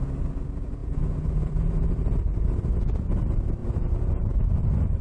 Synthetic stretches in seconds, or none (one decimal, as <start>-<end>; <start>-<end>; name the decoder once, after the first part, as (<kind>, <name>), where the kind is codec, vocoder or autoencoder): 0.8-1.9 (vocoder, Vocos); 3.6-4.4